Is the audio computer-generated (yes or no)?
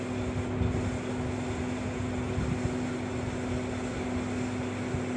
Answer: no